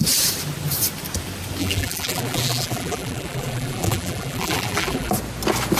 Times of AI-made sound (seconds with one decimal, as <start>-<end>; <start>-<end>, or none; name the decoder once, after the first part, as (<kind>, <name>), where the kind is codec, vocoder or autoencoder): 1.6-5.1 (vocoder, BigVGAN v2)